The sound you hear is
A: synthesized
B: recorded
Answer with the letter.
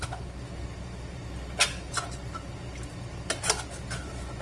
B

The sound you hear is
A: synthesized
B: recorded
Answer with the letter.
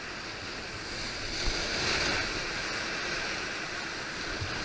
B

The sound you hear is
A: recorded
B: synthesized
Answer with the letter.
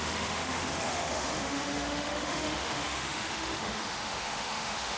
B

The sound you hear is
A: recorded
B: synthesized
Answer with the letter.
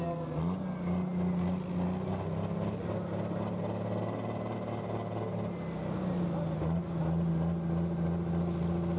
A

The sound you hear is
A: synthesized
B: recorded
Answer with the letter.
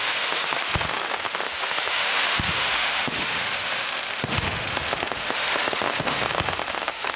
A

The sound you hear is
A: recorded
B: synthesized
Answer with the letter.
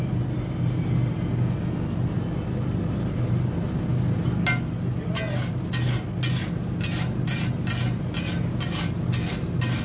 A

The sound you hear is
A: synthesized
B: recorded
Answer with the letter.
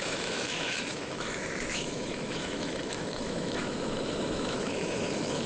A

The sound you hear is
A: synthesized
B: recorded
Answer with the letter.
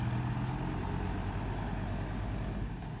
B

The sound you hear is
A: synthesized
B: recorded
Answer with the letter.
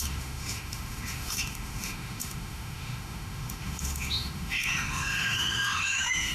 A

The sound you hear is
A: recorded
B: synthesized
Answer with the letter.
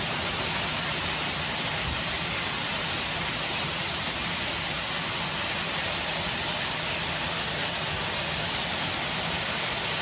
A